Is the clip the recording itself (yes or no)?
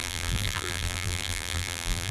no